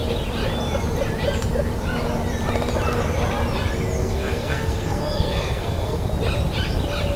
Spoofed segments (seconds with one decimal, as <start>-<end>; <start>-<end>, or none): 4.0-6.1